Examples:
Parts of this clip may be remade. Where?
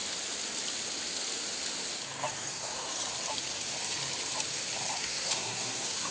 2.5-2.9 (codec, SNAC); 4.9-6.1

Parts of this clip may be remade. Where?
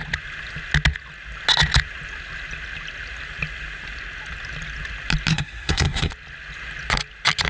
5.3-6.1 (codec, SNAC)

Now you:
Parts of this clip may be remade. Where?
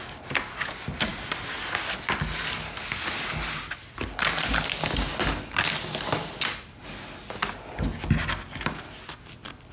none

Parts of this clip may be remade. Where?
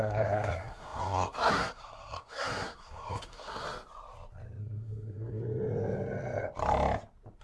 0.0-3.6 (codec, SNAC); 4.6-5.4